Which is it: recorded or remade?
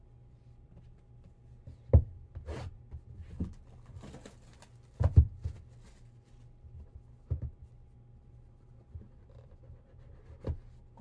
recorded